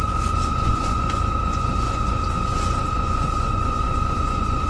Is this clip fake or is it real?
fake